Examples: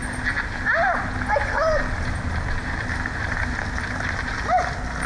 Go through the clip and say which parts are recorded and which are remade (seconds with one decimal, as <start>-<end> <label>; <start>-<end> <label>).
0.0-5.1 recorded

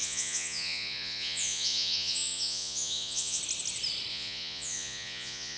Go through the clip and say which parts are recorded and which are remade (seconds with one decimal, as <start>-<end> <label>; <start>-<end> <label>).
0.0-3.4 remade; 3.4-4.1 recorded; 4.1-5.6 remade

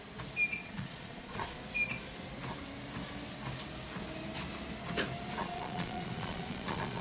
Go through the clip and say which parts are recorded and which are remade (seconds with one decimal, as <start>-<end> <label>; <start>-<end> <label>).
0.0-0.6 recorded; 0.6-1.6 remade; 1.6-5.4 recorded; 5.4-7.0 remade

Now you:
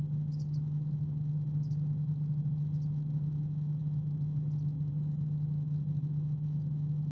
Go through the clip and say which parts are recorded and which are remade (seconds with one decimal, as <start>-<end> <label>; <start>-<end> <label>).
0.0-7.1 recorded

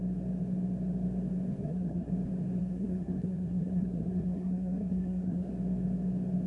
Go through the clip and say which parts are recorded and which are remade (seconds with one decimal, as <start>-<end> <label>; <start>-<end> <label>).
0.0-1.6 recorded; 1.6-2.1 remade; 2.1-2.6 recorded; 2.6-5.5 remade; 5.5-6.5 recorded

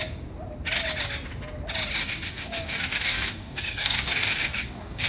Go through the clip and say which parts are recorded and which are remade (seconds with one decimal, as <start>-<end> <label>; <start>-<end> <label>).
0.0-2.0 recorded; 2.0-5.1 remade